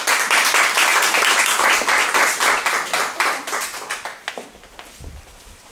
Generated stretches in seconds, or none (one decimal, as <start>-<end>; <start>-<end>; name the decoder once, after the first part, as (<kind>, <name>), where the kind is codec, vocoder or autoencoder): none